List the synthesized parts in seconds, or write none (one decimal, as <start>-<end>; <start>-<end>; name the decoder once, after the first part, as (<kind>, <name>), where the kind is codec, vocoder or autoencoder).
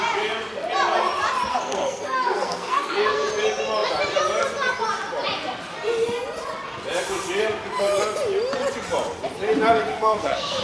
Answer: 1.5-3.3 (codec, SNAC); 9.9-10.6